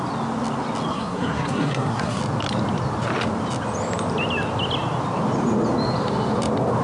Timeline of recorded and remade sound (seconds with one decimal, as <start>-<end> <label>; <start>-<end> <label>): 0.0-0.9 recorded; 0.9-2.2 remade; 2.2-6.8 recorded